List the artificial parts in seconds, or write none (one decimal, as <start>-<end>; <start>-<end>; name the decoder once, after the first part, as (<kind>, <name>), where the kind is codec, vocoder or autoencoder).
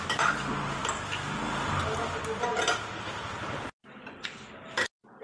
none